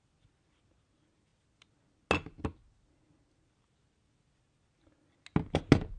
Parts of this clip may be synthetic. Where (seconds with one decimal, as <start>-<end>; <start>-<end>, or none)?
none